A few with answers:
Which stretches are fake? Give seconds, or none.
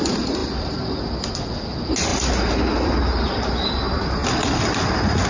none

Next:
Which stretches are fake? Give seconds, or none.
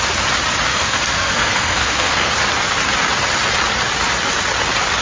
0.7-2.3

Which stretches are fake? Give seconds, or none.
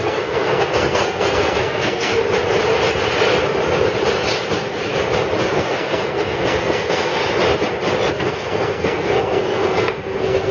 0.0-2.1; 5.4-7.2; 8.1-10.5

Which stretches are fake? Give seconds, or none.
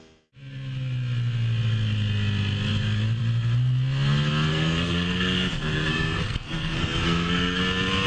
4.5-7.6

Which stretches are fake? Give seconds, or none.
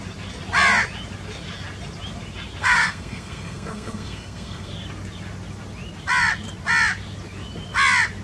2.6-4.7